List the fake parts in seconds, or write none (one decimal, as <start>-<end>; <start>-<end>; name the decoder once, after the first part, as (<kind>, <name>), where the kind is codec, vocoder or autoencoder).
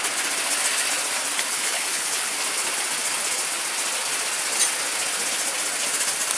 1.5-2.3 (codec, HILCodec)